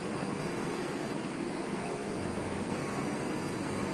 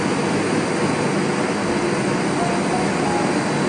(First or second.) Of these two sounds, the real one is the second